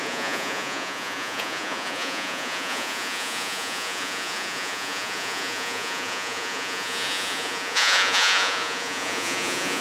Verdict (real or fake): fake